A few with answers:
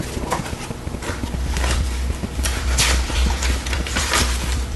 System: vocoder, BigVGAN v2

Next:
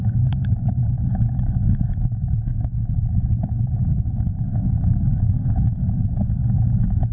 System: codec, DAC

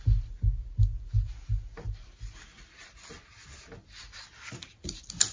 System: none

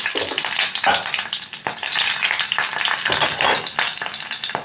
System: none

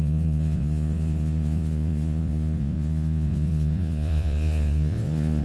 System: vocoder, Vocos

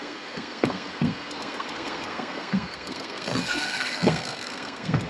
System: codec, SNAC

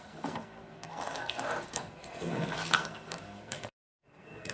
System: codec, SNAC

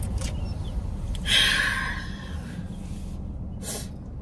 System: none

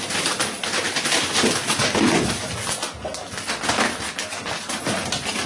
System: none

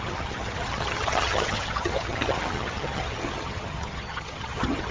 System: vocoder, HiFi-GAN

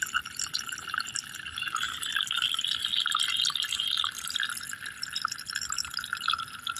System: none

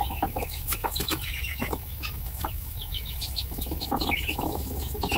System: autoencoder, DAC-VAE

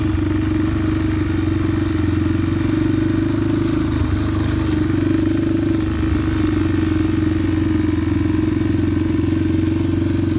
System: none